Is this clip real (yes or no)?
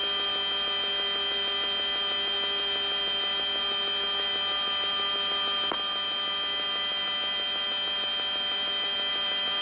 yes